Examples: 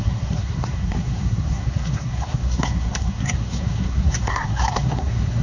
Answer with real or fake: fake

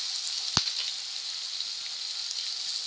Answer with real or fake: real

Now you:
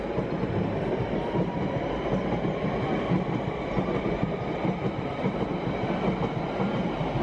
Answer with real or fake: real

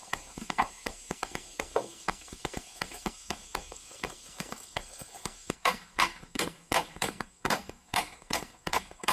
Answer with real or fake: fake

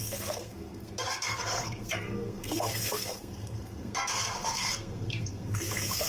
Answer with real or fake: fake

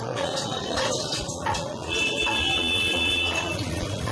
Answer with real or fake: fake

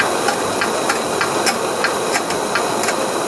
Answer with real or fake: real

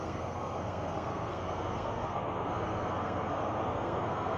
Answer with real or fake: fake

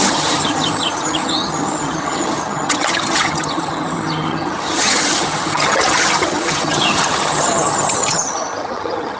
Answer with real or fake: fake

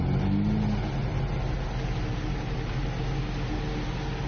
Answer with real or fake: real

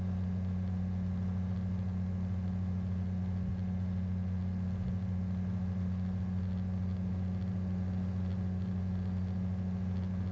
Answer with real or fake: real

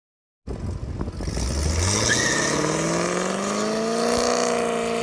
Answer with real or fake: real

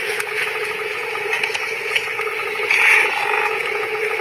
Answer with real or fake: fake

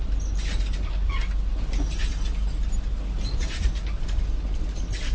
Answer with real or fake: real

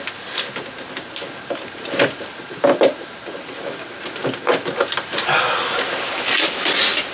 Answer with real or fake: real